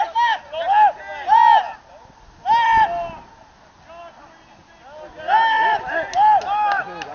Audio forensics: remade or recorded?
recorded